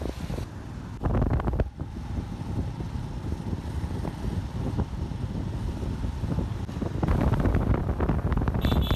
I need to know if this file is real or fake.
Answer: real